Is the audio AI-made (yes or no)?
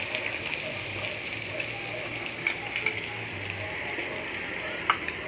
no